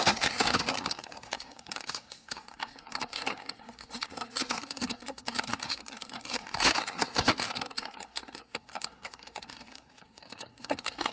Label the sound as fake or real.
fake